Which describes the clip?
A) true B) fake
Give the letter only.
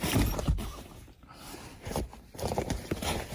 B